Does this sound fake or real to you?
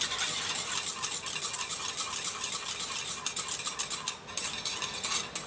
real